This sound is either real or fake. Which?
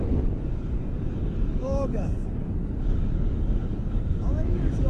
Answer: fake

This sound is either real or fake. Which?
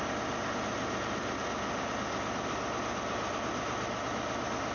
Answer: real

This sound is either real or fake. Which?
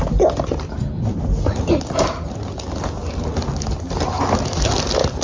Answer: real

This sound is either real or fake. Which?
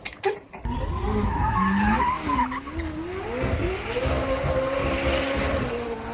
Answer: real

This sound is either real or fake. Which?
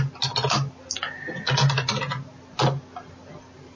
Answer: real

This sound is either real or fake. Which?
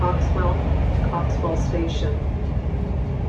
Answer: real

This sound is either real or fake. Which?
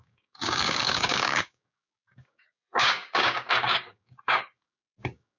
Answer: fake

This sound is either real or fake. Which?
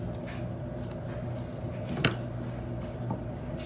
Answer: real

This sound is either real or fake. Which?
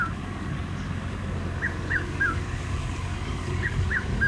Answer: fake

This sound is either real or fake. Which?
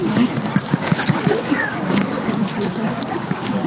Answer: fake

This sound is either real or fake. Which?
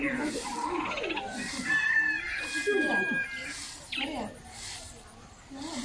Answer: real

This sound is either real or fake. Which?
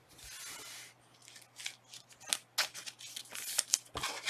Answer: real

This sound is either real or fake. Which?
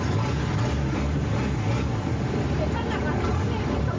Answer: real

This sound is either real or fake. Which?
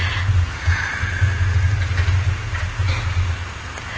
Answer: real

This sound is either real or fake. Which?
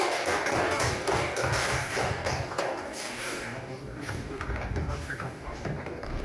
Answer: fake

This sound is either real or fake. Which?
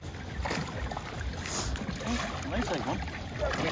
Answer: real